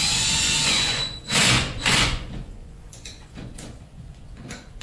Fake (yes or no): yes